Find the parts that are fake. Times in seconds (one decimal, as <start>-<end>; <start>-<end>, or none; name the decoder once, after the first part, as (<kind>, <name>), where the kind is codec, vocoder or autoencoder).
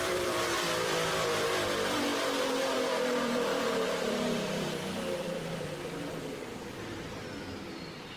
0.0-6.8 (vocoder, BigVGAN v2)